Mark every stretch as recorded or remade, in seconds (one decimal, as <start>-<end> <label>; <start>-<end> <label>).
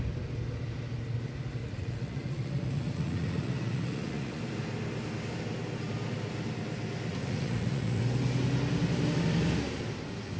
0.0-1.6 recorded; 1.6-4.4 remade; 4.4-7.1 recorded; 7.1-8.0 remade; 8.0-10.4 recorded